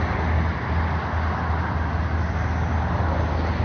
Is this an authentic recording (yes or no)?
yes